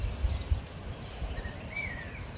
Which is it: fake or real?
real